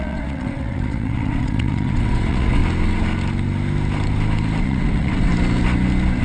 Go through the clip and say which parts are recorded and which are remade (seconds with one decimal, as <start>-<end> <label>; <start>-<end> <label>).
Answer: 0.0-2.6 remade; 2.6-4.6 recorded; 4.6-5.3 remade; 5.3-6.2 recorded